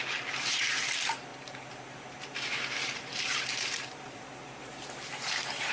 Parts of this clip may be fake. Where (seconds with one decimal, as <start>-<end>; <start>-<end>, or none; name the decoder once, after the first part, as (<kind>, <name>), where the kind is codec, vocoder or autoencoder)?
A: 0.0-5.7 (vocoder, BigVGAN v2)